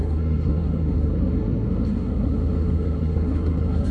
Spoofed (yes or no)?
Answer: yes